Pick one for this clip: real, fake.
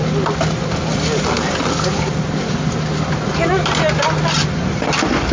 real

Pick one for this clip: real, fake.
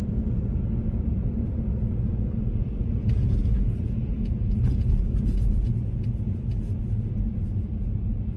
fake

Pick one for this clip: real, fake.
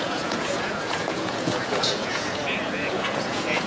fake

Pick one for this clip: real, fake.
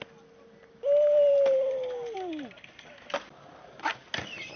real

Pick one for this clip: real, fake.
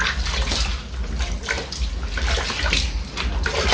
real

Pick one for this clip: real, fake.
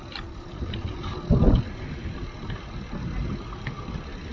real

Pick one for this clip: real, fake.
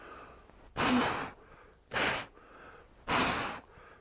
real